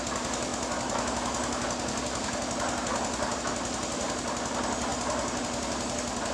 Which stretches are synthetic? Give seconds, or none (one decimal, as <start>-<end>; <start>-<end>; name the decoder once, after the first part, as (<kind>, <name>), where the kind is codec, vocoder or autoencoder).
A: none